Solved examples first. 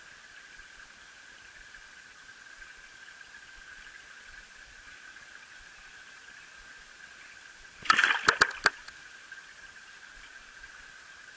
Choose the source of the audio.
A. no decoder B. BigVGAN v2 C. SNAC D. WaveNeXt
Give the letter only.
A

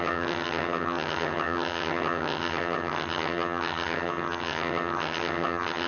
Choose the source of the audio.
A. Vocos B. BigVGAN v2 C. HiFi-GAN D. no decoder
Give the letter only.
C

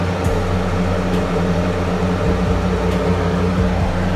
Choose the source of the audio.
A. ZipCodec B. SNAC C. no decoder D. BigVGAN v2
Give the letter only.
C